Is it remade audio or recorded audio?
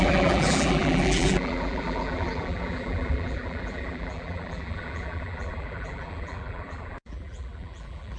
remade